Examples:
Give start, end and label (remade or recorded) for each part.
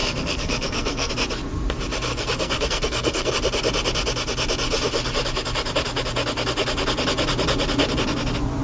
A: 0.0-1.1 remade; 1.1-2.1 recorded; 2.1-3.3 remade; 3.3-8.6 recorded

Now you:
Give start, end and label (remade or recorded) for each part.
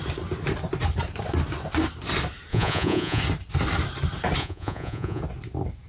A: 0.0-2.5 recorded; 2.5-3.2 remade; 3.2-4.4 recorded; 4.4-5.2 remade; 5.2-5.9 recorded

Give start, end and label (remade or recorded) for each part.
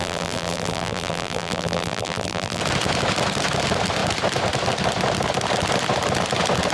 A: 0.0-2.6 remade; 2.6-6.7 recorded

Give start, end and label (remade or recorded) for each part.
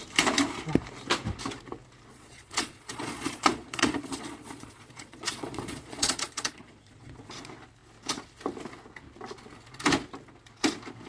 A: 0.0-2.1 recorded; 2.1-7.3 remade; 7.3-11.1 recorded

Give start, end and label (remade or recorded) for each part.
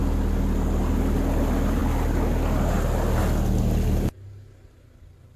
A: 0.0-5.4 recorded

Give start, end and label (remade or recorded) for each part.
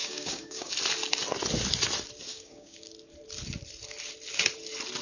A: 0.0-0.7 remade; 0.7-2.3 recorded; 2.3-2.9 remade; 2.9-5.0 recorded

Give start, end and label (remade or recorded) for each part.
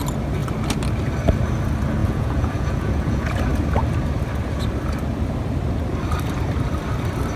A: 0.0-2.0 recorded; 2.0-3.4 remade; 3.4-7.4 recorded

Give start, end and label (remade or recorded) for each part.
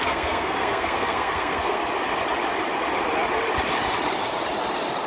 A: 0.0-1.8 remade; 1.8-5.1 recorded